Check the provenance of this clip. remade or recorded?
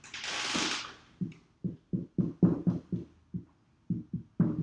recorded